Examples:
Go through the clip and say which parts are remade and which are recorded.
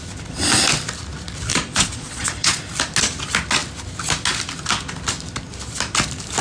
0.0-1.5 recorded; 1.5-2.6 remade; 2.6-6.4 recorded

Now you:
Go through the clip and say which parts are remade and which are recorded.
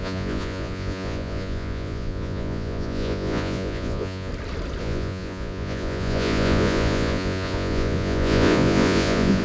0.0-4.3 remade; 4.3-4.8 recorded; 4.8-9.4 remade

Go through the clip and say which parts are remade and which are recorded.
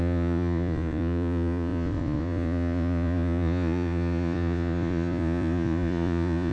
0.0-6.5 remade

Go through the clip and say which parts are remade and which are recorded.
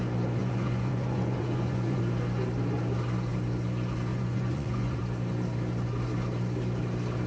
0.0-0.4 recorded; 0.4-2.0 remade; 2.0-4.1 recorded; 4.1-5.0 remade; 5.0-7.3 recorded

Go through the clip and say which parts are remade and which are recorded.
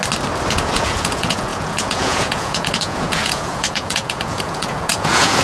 0.0-0.5 recorded; 0.5-5.4 remade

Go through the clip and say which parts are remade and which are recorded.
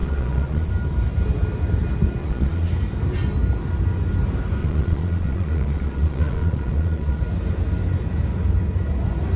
0.0-0.7 remade; 0.7-2.2 recorded; 2.2-2.7 remade; 2.7-4.6 recorded; 4.6-7.2 remade; 7.2-9.4 recorded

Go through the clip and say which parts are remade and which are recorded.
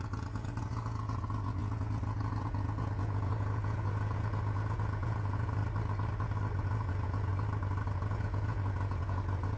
0.0-5.6 remade; 5.6-6.6 recorded; 6.6-7.3 remade; 7.3-8.1 recorded; 8.1-9.6 remade